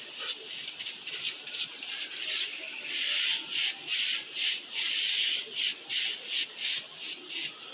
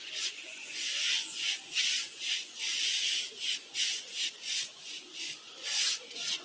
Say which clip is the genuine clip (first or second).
first